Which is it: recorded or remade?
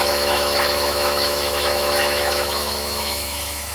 remade